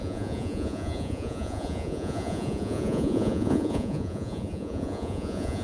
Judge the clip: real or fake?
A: fake